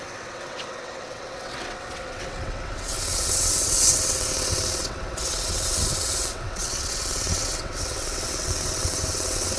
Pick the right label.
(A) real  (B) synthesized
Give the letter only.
B